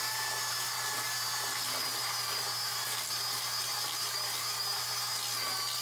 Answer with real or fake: real